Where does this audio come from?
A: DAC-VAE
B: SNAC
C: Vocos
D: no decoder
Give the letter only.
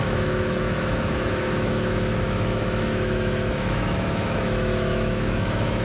A